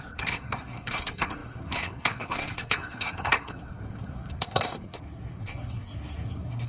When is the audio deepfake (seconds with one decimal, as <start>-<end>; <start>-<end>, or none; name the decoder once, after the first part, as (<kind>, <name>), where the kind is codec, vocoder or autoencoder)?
0.0-6.7 (codec, SNAC)